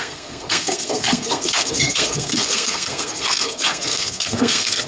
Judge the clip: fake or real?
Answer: fake